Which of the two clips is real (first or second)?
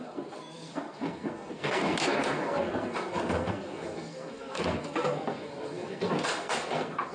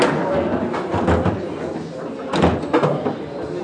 second